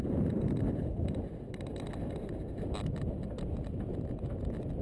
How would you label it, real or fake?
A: real